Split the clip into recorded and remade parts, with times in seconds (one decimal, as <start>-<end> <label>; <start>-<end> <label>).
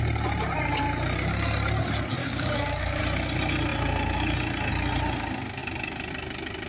0.0-2.2 recorded; 2.2-3.0 remade; 3.0-6.7 recorded